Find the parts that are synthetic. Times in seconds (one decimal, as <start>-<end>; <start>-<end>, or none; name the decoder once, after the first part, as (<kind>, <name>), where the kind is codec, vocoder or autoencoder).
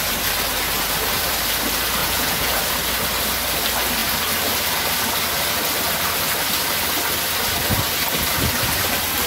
2.0-2.6 (vocoder, Vocos)